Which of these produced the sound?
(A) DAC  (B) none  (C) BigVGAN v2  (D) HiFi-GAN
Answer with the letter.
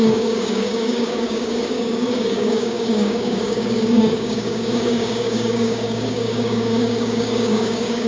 A